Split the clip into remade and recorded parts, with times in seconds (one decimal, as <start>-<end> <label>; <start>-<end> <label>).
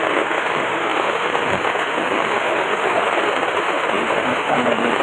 0.0-5.0 remade